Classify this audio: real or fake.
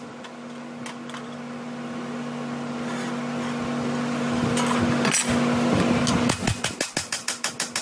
real